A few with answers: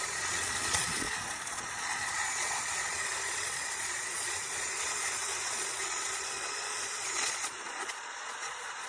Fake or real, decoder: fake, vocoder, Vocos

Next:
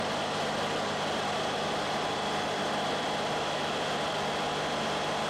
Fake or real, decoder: real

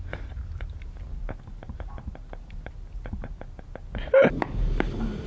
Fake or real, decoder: real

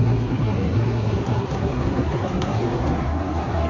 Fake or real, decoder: fake, codec, SNAC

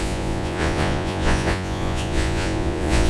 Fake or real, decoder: fake, vocoder, Vocos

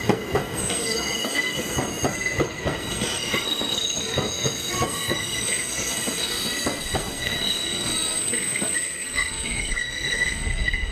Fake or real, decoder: fake, codec, SNAC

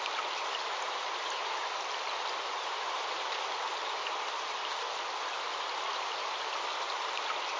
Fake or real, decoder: real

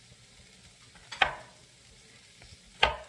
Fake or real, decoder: real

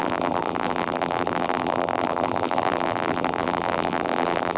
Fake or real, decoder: fake, vocoder, BigVGAN v2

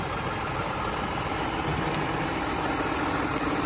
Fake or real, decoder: real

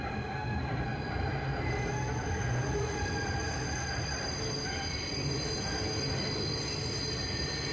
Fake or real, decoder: real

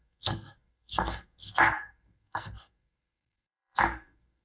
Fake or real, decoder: fake, codec, SNAC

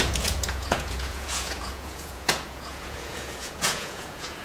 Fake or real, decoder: fake, vocoder, Vocos